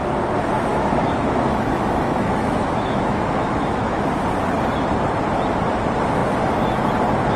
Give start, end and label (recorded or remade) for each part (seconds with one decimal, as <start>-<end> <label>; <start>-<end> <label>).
0.0-0.7 recorded; 0.7-4.1 remade; 4.1-7.4 recorded